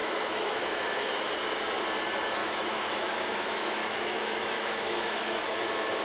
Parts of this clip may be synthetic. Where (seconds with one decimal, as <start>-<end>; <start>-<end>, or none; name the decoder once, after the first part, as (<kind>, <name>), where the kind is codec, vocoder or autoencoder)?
0.0-1.3 (autoencoder, DAC-VAE); 2.4-6.0

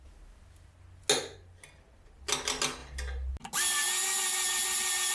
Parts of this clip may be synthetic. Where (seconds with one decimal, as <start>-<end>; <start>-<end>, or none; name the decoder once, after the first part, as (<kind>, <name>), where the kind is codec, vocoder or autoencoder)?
none

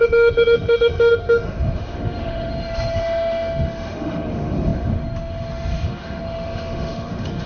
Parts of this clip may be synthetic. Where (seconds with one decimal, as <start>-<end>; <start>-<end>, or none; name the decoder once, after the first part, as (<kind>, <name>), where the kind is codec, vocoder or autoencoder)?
0.0-7.5 (autoencoder, DAC-VAE)

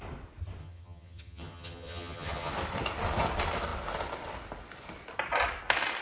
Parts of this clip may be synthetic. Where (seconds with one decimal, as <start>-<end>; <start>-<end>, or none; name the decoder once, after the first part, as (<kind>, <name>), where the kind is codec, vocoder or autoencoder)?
0.6-2.5 (vocoder, HiFi-GAN)

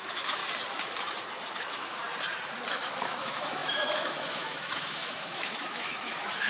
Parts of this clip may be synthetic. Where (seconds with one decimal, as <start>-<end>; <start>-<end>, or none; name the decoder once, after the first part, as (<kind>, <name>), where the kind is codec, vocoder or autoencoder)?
0.0-0.4 (autoencoder, DAC-VAE); 1.5-2.0; 2.7-6.5

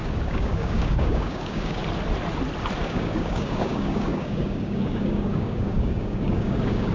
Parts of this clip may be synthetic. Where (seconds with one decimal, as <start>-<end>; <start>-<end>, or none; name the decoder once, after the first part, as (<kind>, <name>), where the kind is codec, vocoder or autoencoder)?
0.0-1.8 (codec, DAC); 2.8-6.9

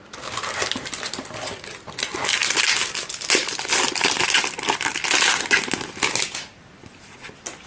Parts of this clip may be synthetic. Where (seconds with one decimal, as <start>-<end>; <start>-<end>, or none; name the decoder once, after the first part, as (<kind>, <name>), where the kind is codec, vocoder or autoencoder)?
none

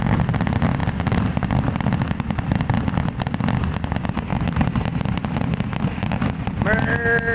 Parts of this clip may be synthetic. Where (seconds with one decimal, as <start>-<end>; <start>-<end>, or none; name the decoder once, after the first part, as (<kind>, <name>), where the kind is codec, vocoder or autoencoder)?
none